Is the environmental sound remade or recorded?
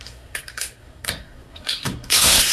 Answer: remade